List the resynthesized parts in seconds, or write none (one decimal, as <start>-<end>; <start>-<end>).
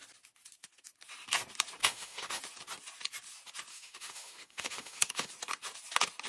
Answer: 1.8-2.4; 3.7-5.3